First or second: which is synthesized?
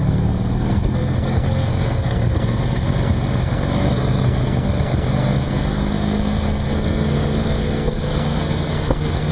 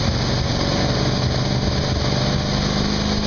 first